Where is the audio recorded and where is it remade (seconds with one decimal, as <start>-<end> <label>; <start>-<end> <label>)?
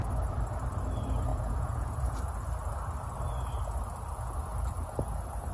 0.0-1.3 recorded; 1.3-2.2 remade; 2.2-5.5 recorded